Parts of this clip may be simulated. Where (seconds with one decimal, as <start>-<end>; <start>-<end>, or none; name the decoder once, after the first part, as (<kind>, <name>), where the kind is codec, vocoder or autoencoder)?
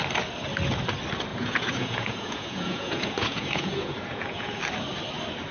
1.3-4.6 (vocoder, Vocos)